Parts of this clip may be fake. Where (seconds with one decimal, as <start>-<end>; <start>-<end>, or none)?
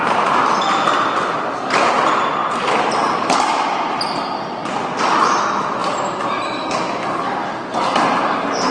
none